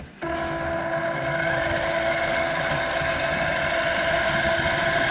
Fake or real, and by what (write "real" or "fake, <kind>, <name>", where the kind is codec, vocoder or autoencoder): real